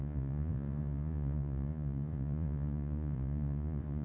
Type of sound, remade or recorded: remade